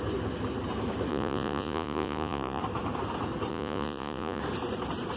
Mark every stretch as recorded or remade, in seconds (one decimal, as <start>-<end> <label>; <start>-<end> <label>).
0.0-1.1 recorded; 1.1-2.6 remade; 2.6-3.5 recorded; 3.5-4.4 remade; 4.4-5.2 recorded